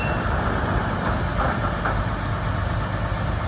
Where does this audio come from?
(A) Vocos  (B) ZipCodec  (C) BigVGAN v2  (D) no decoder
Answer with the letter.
D